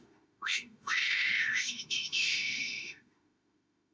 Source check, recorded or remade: remade